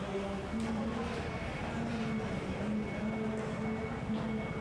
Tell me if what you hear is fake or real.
real